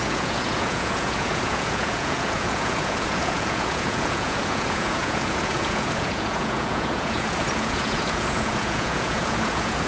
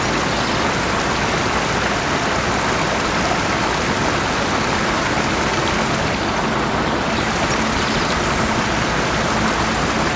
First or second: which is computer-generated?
first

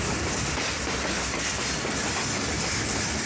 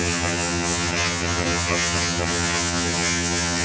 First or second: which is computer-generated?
second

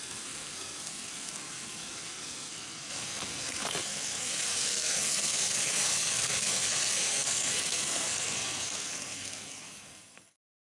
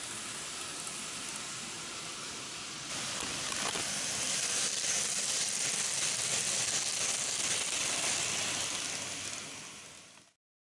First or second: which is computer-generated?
first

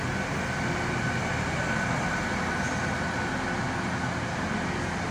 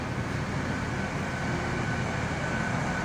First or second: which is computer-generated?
second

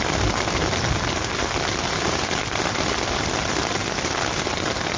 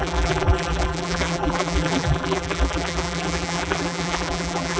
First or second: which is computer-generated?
second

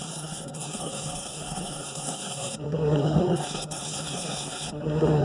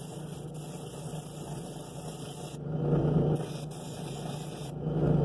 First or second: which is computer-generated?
first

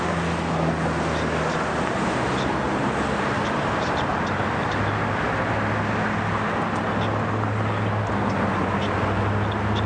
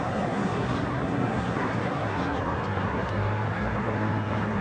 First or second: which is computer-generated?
second